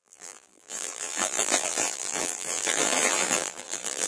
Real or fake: fake